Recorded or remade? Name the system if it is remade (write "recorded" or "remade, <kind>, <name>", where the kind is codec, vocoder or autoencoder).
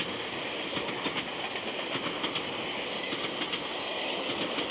recorded